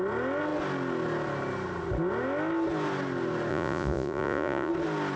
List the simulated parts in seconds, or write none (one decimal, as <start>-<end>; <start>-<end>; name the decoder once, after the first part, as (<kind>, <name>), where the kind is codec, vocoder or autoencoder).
3.5-4.7 (vocoder, Vocos)